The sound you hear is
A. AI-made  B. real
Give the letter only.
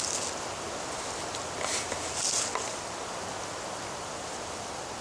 B